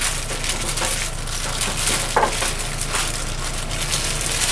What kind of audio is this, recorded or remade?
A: recorded